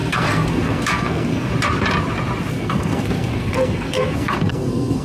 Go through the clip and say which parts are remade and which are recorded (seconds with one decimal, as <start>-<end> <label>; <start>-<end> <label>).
0.0-1.5 remade; 1.5-2.5 recorded; 2.5-5.0 remade